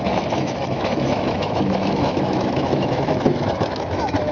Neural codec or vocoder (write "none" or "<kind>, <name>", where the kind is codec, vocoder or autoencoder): autoencoder, DAC-VAE